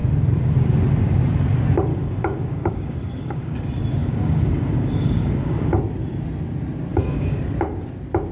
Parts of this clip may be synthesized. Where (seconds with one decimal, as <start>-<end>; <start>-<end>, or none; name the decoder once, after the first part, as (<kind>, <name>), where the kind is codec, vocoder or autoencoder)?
1.9-3.6 (codec, DAC); 4.0-5.8; 6.9-7.4